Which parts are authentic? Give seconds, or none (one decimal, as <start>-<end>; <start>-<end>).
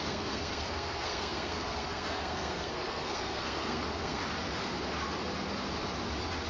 4.2-6.5